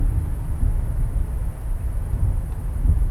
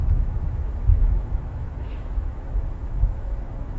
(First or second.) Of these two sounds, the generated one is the second